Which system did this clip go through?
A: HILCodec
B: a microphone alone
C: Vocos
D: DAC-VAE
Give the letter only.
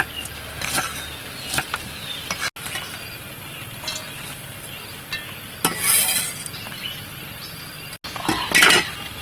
B